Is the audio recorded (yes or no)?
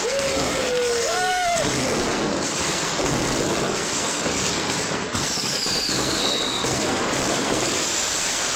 no